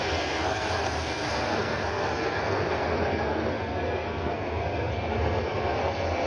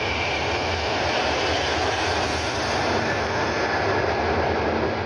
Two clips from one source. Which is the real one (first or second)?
second